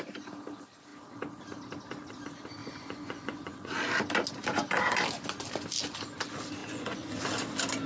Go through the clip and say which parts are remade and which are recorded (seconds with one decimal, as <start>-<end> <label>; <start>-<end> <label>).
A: 0.0-2.6 recorded; 2.6-3.7 remade; 3.7-6.6 recorded; 6.6-7.2 remade; 7.2-7.9 recorded